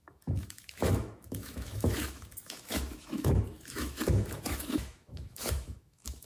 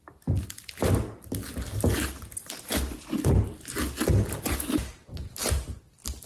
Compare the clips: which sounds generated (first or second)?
first